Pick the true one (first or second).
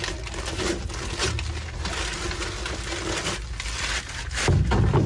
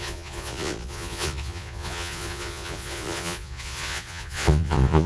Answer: first